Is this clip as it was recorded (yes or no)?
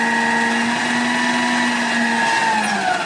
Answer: yes